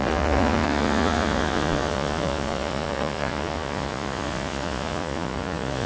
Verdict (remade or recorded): remade